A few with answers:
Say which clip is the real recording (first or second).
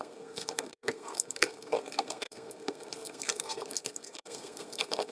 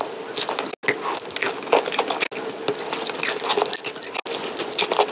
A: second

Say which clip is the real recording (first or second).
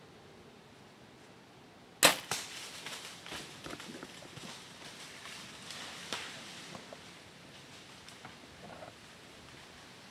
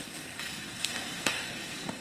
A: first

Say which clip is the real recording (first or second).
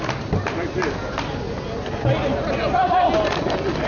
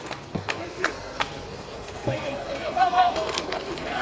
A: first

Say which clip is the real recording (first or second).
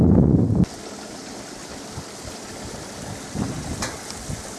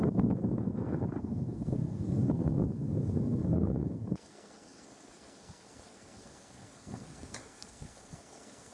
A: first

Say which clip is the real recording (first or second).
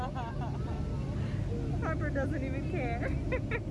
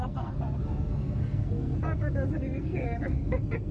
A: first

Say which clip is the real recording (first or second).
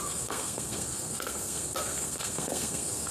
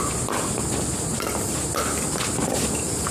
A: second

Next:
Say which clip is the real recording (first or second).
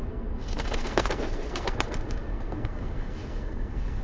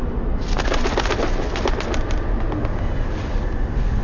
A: second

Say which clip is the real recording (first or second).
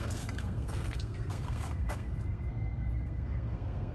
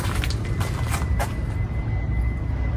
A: second